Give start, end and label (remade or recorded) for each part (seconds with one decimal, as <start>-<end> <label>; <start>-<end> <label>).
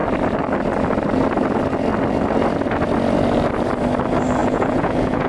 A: 0.0-4.4 recorded; 4.4-5.3 remade